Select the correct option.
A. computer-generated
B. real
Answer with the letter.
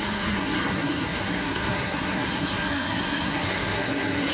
A